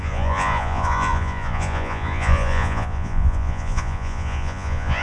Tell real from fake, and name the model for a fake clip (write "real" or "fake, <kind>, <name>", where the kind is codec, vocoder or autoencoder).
fake, vocoder, Vocos